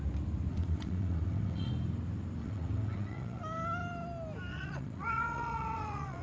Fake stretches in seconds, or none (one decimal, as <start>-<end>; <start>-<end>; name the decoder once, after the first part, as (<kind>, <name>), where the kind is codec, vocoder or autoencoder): 0.5-1.7 (vocoder, WaveNeXt); 2.4-3.4; 4.5-6.2